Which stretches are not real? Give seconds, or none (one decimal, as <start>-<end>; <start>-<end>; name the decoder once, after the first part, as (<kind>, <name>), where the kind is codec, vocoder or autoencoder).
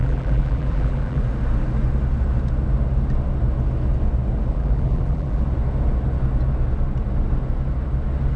0.0-1.2 (vocoder, BigVGAN v2); 4.5-5.4